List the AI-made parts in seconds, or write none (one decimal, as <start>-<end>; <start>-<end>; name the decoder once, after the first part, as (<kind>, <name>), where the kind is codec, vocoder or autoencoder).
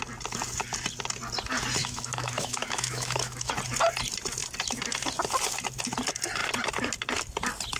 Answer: 1.8-3.5 (autoencoder, DAC-VAE)